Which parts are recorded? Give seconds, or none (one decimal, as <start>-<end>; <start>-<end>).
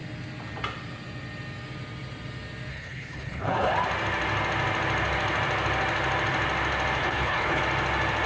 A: 0.0-2.7; 3.7-7.0; 7.6-8.3